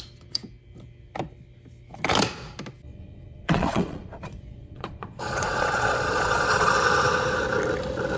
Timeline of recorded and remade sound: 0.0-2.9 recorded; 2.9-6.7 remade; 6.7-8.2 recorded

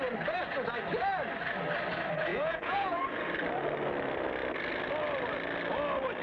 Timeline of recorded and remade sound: 0.0-2.3 recorded; 2.3-3.0 remade; 3.0-6.2 recorded

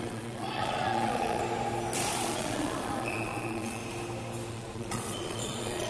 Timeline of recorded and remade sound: 0.0-1.4 remade; 1.4-2.0 recorded; 2.0-3.8 remade; 3.8-4.5 recorded; 4.5-5.9 remade